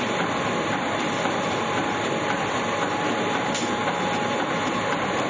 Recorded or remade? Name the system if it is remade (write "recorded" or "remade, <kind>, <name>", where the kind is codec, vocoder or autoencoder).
remade, vocoder, BigVGAN v2